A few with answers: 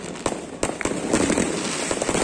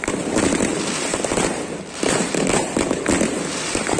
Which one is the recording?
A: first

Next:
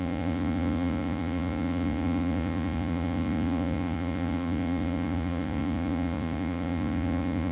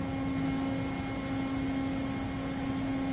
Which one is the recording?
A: second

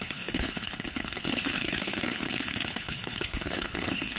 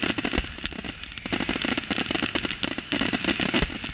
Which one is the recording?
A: second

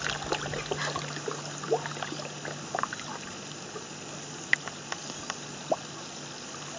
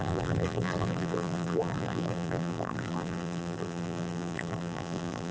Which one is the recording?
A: first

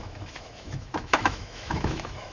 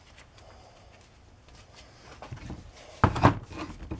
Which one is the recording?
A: second